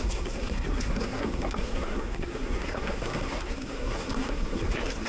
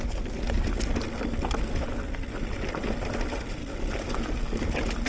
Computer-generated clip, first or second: first